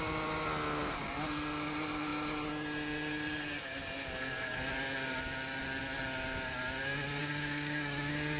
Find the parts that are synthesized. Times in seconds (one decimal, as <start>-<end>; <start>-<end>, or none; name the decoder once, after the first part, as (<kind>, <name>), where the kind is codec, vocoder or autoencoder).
7.2-8.4 (codec, DAC)